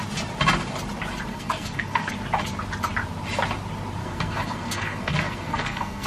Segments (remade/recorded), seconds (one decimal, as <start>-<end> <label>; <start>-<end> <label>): 0.0-1.3 recorded; 1.3-2.1 remade; 2.1-4.0 recorded; 4.0-6.1 remade